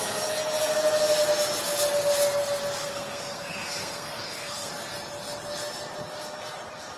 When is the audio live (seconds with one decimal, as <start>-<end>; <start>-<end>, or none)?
0.0-2.8; 4.7-7.0